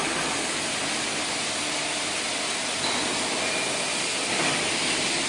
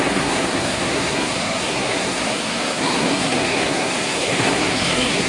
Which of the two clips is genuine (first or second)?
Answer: first